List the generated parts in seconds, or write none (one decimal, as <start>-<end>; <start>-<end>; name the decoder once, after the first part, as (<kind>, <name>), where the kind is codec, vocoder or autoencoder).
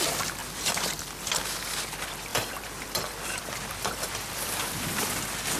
0.4-0.9 (vocoder, BigVGAN v2); 2.3-5.1